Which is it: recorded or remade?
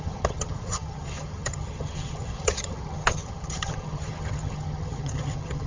remade